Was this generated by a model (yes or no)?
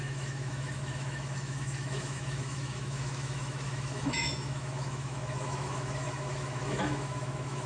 yes